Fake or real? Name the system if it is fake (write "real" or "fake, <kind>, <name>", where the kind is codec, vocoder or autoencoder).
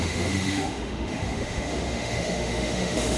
fake, autoencoder, DAC-VAE